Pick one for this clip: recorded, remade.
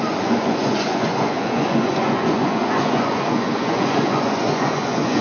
remade